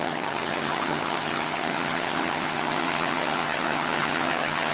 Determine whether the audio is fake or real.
fake